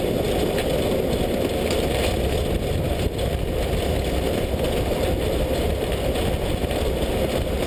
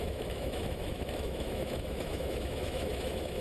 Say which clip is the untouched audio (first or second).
first